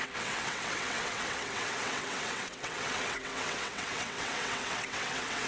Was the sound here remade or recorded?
remade